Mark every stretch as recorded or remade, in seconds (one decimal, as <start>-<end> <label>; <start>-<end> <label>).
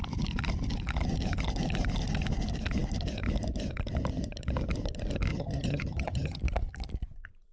0.0-5.3 recorded; 5.3-6.4 remade; 6.4-7.5 recorded